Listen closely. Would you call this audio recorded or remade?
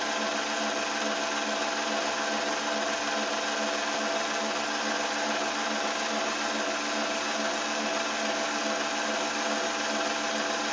recorded